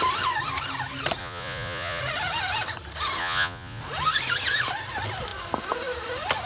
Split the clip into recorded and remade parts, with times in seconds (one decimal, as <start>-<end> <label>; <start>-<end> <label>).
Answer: 0.0-1.2 recorded; 1.2-2.0 remade; 2.0-3.2 recorded; 3.2-3.8 remade; 3.8-6.5 recorded